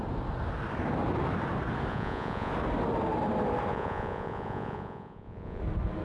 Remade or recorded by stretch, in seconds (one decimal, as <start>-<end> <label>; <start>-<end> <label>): 0.0-1.9 recorded; 1.9-2.5 remade; 2.5-3.7 recorded; 3.7-5.6 remade; 5.6-6.0 recorded